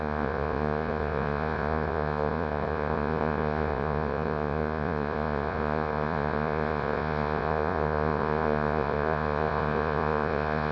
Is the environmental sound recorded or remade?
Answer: remade